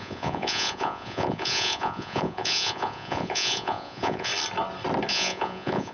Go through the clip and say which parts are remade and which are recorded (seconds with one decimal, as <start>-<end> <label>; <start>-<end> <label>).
0.0-4.3 remade; 4.3-5.1 recorded; 5.1-5.9 remade